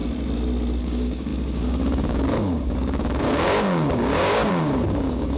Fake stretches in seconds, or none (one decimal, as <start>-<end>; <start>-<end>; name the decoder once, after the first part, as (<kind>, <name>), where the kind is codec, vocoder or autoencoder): 0.8-5.4 (codec, DAC)